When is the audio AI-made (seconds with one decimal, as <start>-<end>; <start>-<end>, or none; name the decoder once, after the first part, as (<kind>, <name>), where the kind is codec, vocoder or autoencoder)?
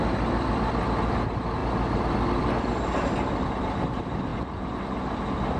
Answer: none